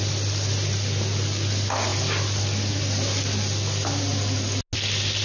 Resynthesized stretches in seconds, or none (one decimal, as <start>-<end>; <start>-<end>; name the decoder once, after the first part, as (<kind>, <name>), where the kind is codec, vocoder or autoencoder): none